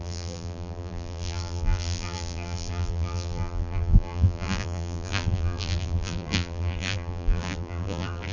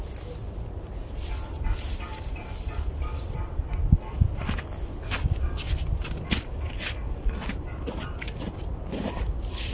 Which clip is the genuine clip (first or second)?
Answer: second